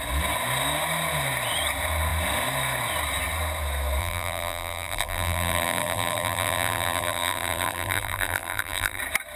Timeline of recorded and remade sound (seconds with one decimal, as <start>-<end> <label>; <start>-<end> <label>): 0.0-4.0 recorded; 4.0-9.0 remade; 9.0-9.4 recorded